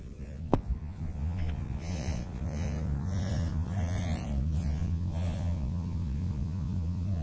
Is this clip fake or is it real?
fake